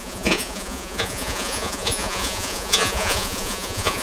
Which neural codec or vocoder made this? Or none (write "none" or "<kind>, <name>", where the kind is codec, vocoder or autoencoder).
vocoder, Vocos